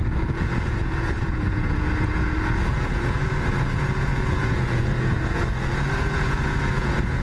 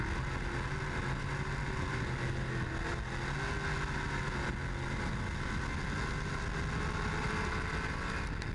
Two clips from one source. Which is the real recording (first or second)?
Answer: second